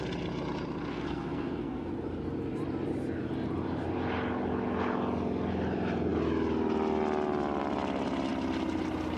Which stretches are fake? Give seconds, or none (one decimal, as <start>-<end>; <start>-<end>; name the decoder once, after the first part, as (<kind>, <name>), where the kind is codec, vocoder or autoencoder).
0.9-1.9 (codec, SNAC)